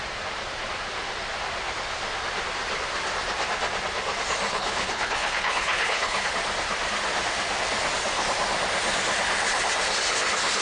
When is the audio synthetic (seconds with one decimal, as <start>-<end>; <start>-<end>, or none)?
4.5-6.3